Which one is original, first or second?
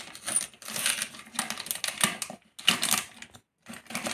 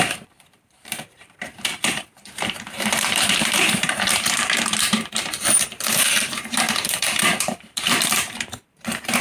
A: first